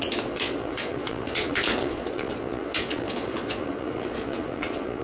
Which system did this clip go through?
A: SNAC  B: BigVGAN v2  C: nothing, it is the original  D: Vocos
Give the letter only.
D